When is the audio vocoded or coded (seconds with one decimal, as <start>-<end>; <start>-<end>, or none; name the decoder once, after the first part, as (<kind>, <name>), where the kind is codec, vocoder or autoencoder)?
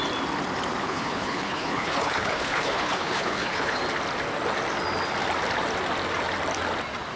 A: 0.8-3.8 (codec, HILCodec)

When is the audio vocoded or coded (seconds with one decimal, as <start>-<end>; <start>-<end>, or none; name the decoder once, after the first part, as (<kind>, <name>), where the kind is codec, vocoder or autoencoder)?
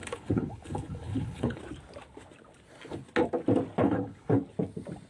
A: 0.0-1.6 (codec, HILCodec); 3.8-4.4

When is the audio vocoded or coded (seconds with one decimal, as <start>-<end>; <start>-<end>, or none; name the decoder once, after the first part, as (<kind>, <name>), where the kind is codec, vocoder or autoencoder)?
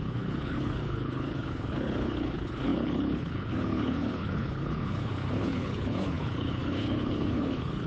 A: 0.0-7.9 (codec, HILCodec)